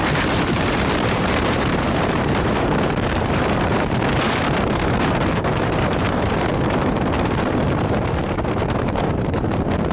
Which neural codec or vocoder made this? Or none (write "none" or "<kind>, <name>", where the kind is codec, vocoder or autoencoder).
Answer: vocoder, BigVGAN v2